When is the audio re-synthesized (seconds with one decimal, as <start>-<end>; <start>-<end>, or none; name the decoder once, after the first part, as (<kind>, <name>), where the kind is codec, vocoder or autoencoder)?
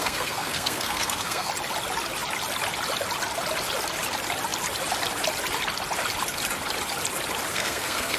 0.0-1.5 (codec, SNAC); 7.5-8.2